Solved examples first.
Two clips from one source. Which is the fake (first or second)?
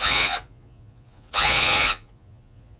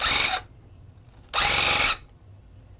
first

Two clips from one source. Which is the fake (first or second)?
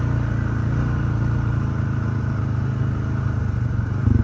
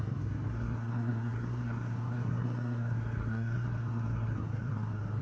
second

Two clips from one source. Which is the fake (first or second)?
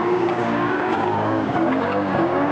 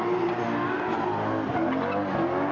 first